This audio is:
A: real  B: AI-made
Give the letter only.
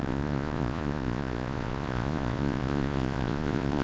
B